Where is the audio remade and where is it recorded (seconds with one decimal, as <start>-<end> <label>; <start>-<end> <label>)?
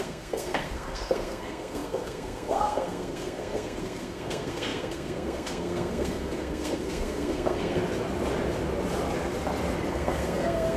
0.0-7.8 remade; 7.8-9.9 recorded; 9.9-10.8 remade